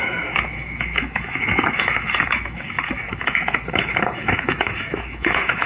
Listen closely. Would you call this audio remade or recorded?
remade